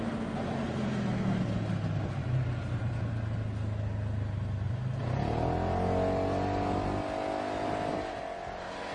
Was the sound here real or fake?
real